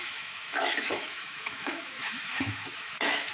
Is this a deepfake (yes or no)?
yes